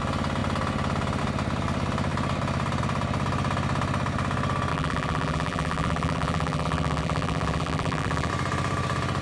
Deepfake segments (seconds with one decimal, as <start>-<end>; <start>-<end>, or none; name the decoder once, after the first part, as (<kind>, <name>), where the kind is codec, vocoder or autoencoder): 4.7-8.3 (vocoder, BigVGAN v2)